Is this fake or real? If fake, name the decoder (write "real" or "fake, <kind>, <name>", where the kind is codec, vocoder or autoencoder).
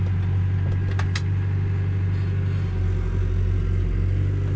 real